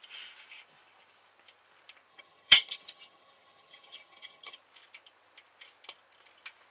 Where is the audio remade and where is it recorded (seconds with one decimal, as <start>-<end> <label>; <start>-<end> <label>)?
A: 0.0-2.1 recorded; 2.1-4.6 remade; 4.6-6.7 recorded